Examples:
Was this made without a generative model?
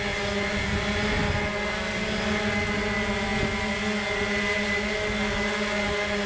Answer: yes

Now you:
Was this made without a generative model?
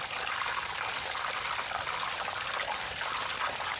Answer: yes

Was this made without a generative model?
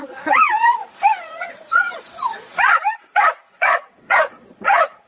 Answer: no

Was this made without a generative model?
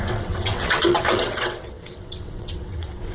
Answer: no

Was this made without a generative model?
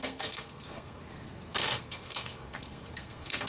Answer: no